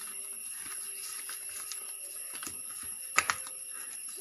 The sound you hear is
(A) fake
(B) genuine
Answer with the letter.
B